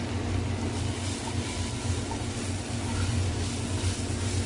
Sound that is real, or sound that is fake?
real